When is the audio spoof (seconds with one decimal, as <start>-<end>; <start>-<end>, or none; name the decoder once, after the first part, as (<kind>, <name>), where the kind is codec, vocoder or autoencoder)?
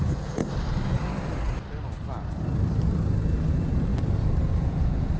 0.0-0.4 (vocoder, Vocos); 3.5-3.9; 4.5-5.2